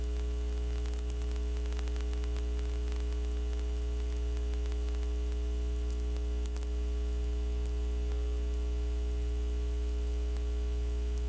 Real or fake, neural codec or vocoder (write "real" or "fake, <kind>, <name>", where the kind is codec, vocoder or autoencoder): real